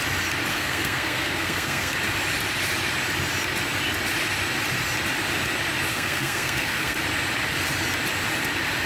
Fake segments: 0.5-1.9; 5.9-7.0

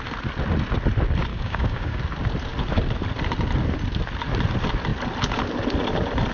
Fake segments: 1.3-2.0

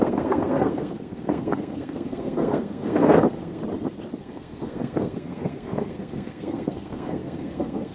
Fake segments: 0.0-3.6; 4.2-7.9

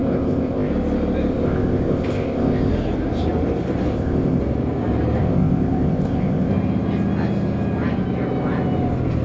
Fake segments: 0.0-0.7; 1.3-2.7; 3.9-4.4; 5.2-6.5

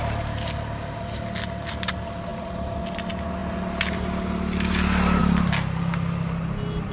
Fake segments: none